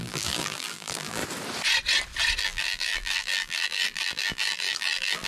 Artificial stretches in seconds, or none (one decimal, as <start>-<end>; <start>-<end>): 0.0-1.2; 2.4-5.3